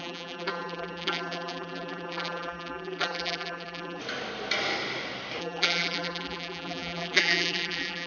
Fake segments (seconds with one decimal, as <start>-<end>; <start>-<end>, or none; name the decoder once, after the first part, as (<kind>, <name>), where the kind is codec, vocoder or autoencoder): 0.0-4.0 (vocoder, BigVGAN v2); 5.4-8.1